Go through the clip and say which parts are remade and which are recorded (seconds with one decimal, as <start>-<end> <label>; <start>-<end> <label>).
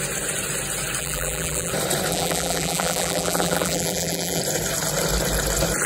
0.0-1.0 recorded; 1.0-1.7 remade; 1.7-2.1 recorded; 2.1-4.4 remade; 4.4-5.9 recorded